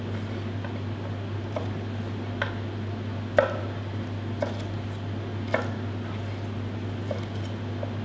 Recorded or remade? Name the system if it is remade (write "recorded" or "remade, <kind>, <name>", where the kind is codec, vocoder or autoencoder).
recorded